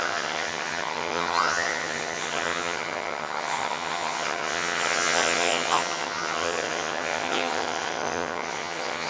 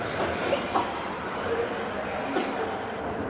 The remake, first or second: first